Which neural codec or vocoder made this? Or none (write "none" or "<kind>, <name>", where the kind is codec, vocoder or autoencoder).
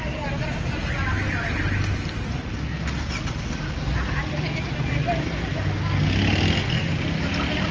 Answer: none